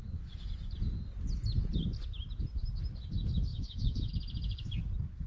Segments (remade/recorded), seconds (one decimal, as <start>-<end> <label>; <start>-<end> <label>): 0.0-0.7 remade; 0.7-3.5 recorded; 3.5-4.1 remade; 4.1-5.3 recorded